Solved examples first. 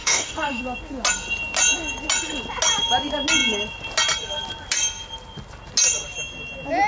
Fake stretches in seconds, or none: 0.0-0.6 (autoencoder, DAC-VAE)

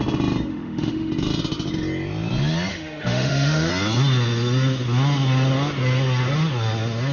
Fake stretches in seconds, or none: 0.5-1.1 (autoencoder, DAC-VAE); 2.7-3.7

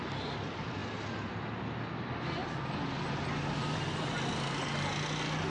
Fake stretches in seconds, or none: none

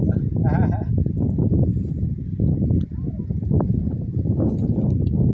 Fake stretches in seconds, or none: none

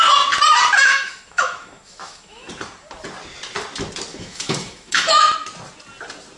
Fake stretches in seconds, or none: 0.8-2.5 (autoencoder, DAC-VAE); 4.1-5.2